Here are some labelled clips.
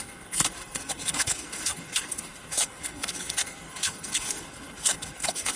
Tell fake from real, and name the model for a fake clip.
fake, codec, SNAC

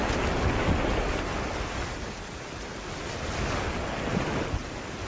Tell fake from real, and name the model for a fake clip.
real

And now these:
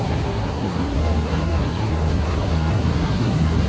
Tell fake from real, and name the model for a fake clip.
fake, codec, SNAC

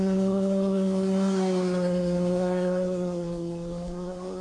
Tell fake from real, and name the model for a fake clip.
fake, codec, SNAC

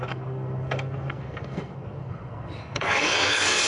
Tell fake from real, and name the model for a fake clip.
fake, codec, SNAC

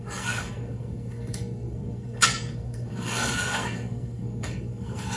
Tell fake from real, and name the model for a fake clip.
fake, codec, SNAC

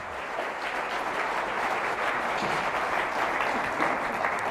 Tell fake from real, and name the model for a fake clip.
real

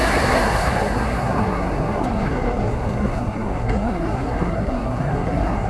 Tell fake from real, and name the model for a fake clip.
fake, codec, SNAC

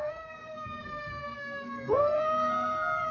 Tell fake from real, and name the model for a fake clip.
fake, codec, SNAC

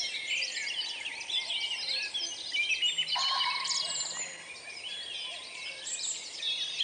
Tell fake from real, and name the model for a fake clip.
real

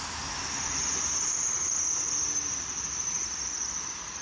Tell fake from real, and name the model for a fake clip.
real